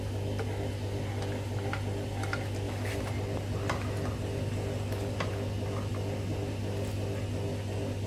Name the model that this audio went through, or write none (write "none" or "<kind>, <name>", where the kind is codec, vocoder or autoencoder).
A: none